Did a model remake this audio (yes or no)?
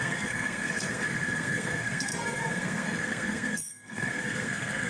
yes